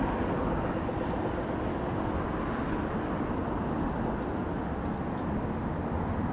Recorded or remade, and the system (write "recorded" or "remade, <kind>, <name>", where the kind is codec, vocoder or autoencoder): recorded